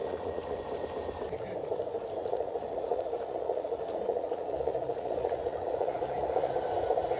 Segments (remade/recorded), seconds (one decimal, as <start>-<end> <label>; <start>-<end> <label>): 0.0-0.6 remade; 0.6-2.2 recorded; 2.2-6.5 remade; 6.5-7.2 recorded